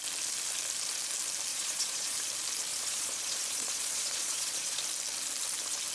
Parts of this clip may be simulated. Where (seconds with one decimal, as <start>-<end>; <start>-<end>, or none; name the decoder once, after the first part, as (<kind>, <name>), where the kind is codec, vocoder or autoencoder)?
1.5-2.3 (vocoder, Vocos); 2.7-4.8